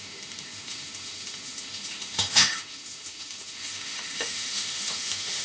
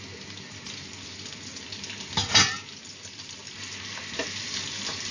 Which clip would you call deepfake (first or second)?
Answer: first